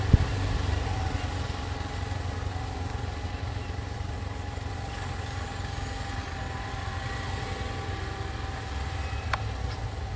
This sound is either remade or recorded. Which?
recorded